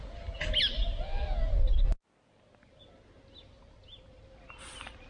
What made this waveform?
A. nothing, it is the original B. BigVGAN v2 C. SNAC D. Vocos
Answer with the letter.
A